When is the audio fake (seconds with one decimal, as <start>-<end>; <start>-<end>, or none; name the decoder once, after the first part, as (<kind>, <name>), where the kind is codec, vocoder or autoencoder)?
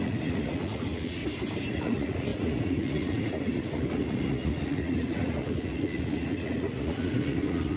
0.0-1.2 (vocoder, Vocos); 1.7-7.8